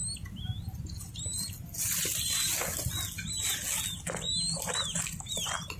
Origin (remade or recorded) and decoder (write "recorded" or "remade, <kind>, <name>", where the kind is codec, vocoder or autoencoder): recorded